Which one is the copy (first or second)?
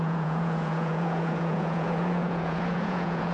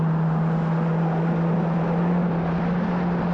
first